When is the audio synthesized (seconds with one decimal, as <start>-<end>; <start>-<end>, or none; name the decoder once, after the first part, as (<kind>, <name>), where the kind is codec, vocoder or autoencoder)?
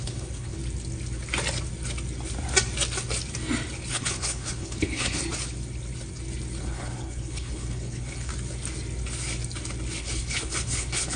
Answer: 0.0-0.6 (codec, HILCodec); 3.9-5.2; 6.6-8.3; 10.0-11.2